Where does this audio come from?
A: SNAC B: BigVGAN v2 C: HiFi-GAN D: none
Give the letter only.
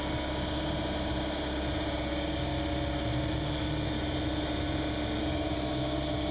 D